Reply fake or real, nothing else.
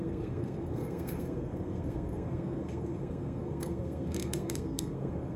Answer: fake